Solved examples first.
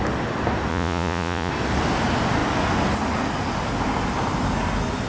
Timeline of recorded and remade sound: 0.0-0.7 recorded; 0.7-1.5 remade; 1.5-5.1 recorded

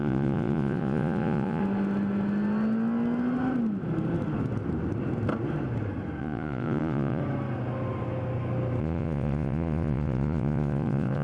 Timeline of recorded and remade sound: 0.0-1.6 remade; 1.6-6.2 recorded; 6.2-7.2 remade; 7.2-8.8 recorded; 8.8-11.2 remade

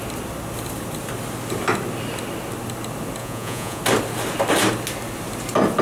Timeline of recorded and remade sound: 0.0-3.2 recorded; 3.2-3.8 remade; 3.8-5.8 recorded

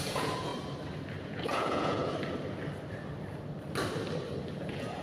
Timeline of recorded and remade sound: 0.0-0.5 remade; 0.5-1.2 recorded; 1.2-2.0 remade; 2.0-4.5 recorded; 4.5-5.0 remade

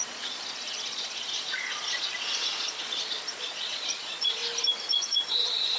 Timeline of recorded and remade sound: 0.0-4.4 remade; 4.4-4.9 recorded; 4.9-5.8 remade

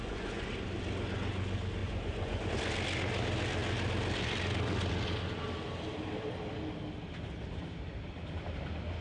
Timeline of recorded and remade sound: 0.0-0.5 remade; 0.5-1.8 recorded; 1.8-2.5 remade; 2.5-9.0 recorded

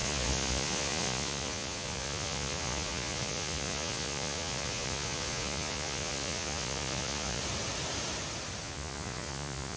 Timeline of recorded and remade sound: 0.0-7.4 remade; 7.4-8.6 recorded; 8.6-9.8 remade

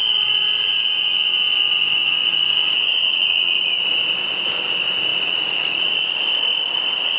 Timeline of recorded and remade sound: 0.0-2.2 recorded; 2.2-3.7 remade; 3.7-5.1 recorded; 5.1-6.2 remade; 6.2-7.2 recorded